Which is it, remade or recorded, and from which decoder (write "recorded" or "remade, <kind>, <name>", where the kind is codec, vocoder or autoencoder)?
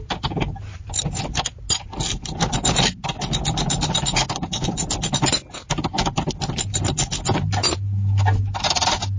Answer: recorded